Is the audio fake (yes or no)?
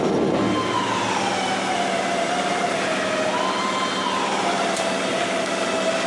no